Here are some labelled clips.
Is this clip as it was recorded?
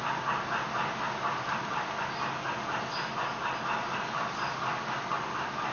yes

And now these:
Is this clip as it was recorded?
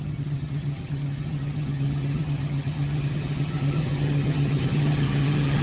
no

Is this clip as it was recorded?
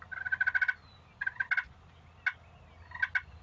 yes